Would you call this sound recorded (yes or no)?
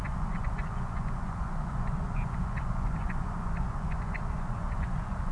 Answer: no